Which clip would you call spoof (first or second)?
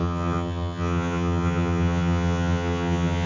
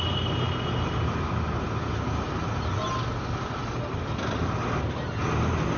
first